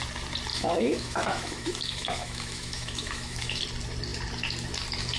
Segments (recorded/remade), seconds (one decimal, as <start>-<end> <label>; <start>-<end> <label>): 0.0-0.5 recorded; 0.5-3.6 remade; 3.6-5.2 recorded